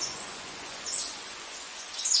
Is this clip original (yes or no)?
no